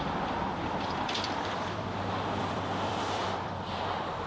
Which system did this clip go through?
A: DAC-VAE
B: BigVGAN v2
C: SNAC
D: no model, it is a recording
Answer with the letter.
B